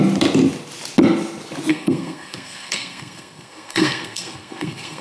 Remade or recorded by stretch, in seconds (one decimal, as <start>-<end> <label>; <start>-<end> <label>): 0.0-1.7 recorded; 1.7-5.0 remade